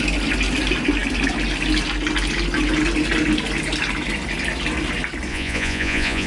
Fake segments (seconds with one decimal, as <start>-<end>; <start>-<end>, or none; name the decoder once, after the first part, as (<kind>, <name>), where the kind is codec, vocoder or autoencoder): 5.3-6.3 (vocoder, Vocos)